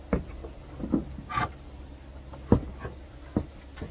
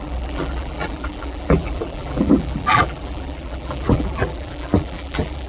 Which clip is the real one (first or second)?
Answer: first